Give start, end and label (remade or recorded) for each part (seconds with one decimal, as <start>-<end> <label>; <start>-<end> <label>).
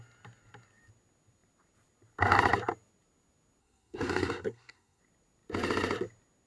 0.0-3.6 recorded; 3.6-5.0 remade; 5.0-6.5 recorded